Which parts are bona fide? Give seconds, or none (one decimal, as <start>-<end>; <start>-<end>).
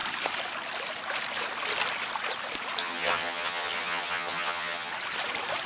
0.0-2.8; 4.9-5.7